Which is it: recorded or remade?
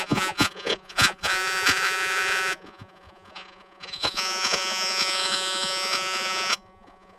remade